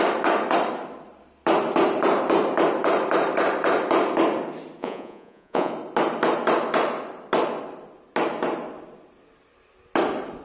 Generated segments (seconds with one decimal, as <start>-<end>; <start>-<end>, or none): 4.8-5.7